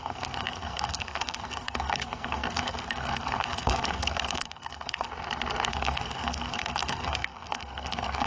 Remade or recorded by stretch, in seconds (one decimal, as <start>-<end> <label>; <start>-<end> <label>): 0.0-5.1 remade; 5.1-5.7 recorded; 5.7-8.3 remade